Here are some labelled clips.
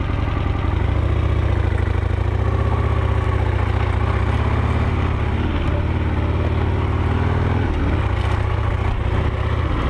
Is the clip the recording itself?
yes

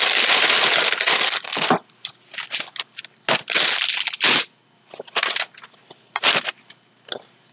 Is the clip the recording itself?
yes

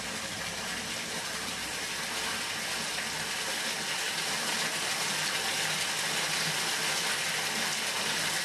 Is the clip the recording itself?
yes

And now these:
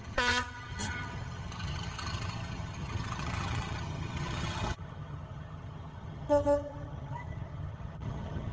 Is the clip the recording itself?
no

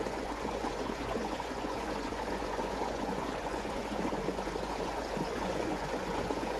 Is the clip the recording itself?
no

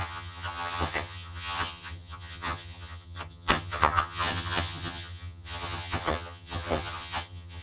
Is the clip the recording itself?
no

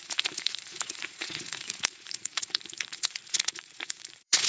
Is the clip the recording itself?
no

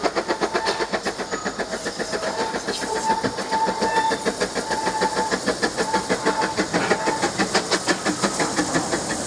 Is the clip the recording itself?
yes